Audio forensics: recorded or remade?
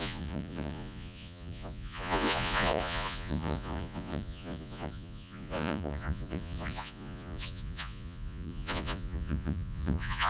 remade